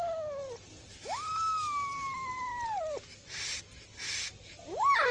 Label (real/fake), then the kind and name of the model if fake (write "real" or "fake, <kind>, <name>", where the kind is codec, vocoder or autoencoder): real